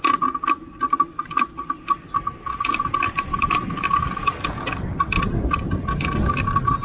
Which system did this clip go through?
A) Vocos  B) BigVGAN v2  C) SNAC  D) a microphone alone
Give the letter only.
D